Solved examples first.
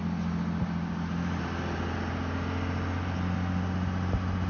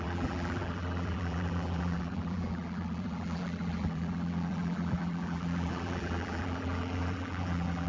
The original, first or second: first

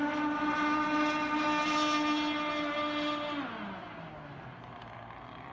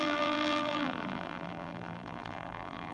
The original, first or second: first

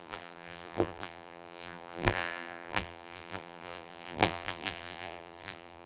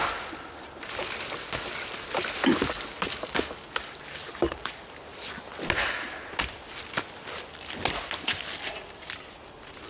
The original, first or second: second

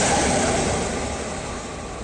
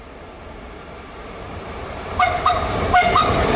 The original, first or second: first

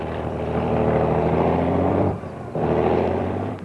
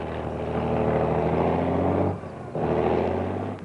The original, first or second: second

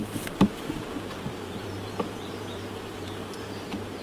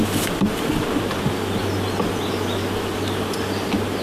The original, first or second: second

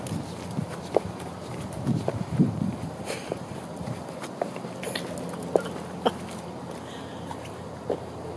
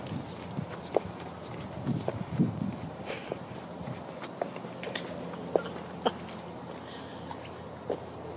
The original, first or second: second